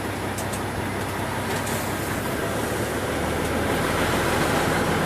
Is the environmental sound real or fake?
real